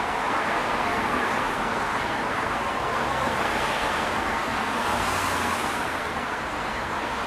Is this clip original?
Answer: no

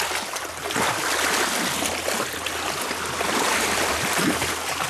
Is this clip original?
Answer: yes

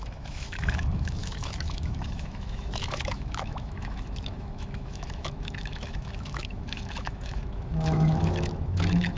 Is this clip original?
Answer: no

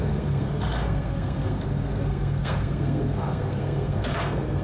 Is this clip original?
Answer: no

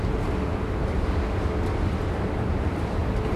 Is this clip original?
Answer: yes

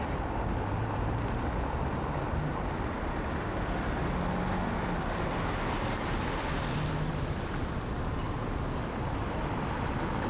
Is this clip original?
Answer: yes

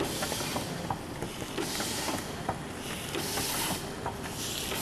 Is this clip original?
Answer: yes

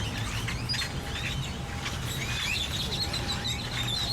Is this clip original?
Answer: yes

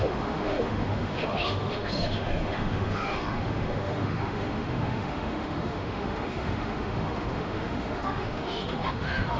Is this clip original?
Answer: no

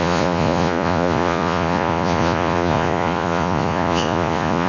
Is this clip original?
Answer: no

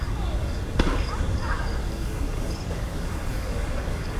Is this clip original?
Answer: no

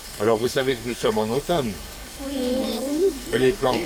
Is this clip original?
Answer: no